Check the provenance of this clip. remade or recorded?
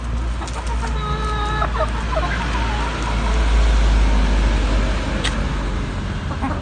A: recorded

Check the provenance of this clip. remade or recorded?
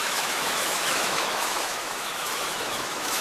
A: remade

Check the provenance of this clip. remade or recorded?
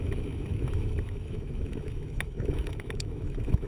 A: remade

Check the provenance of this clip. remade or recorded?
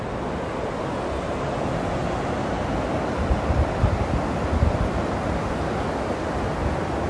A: recorded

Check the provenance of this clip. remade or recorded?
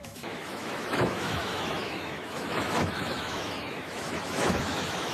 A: remade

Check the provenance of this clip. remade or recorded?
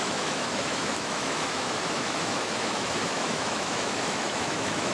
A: remade